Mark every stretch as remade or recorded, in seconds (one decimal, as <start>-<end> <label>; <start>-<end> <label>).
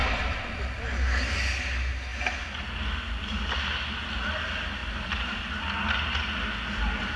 0.0-4.8 recorded; 4.8-5.4 remade; 5.4-7.2 recorded